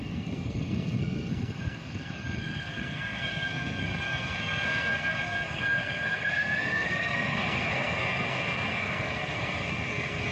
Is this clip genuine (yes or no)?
no